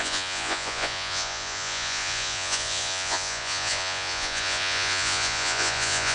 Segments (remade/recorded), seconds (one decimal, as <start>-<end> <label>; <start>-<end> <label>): 0.0-6.1 remade